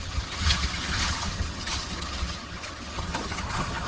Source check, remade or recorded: remade